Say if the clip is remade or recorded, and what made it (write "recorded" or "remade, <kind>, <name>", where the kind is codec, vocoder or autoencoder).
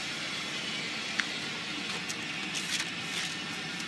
recorded